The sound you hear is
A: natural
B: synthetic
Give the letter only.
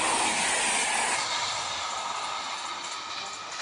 A